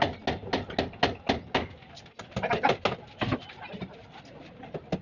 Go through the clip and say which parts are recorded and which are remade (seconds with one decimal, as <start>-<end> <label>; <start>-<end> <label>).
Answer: 0.0-5.0 recorded